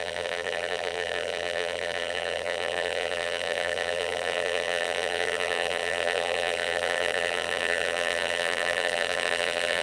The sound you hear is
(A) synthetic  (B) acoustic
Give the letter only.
A